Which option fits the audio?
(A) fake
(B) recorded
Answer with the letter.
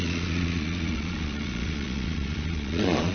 A